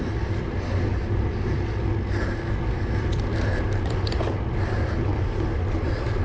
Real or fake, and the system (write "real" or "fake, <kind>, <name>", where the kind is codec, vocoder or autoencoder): real